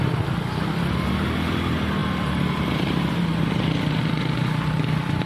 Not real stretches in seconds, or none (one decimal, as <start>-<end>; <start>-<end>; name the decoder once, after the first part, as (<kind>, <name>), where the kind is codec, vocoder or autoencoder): 2.0-4.0 (vocoder, BigVGAN v2)